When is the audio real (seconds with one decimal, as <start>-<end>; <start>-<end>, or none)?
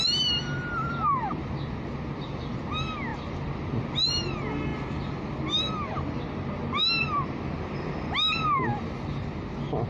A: 0.0-4.7; 6.2-9.9